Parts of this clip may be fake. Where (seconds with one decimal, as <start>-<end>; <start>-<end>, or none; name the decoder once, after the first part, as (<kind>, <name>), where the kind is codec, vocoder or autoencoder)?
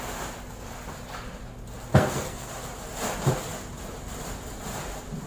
1.9-2.5 (codec, SNAC)